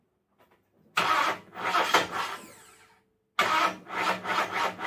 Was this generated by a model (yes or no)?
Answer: no